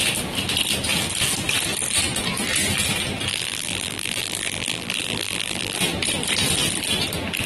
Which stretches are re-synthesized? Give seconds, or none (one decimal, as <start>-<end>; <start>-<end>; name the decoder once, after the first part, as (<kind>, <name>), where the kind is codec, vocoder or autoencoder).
3.3-5.8 (vocoder, BigVGAN v2)